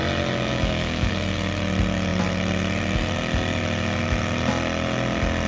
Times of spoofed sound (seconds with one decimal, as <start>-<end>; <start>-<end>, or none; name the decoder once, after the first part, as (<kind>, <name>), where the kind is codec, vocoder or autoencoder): 0.5-1.1 (autoencoder, DAC-VAE)